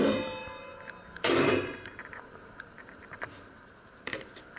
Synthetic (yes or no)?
yes